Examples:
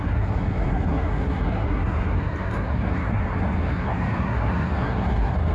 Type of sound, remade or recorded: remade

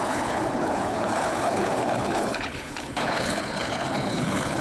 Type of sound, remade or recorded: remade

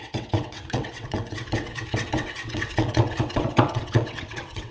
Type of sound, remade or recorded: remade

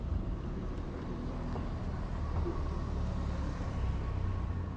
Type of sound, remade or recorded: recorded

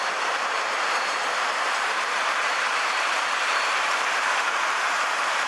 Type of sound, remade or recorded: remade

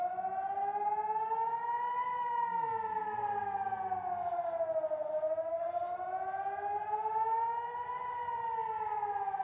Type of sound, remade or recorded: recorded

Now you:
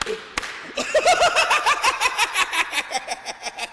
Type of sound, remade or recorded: recorded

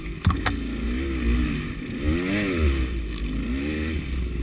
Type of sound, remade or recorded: recorded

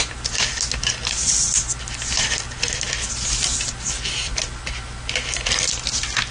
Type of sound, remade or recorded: recorded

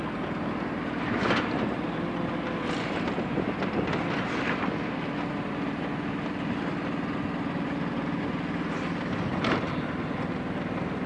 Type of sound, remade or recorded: recorded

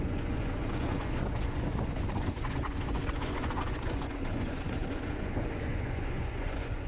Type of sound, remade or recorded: remade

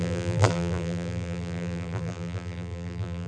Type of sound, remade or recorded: remade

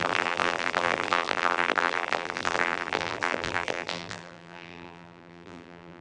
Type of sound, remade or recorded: remade